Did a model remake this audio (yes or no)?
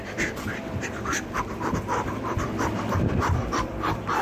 yes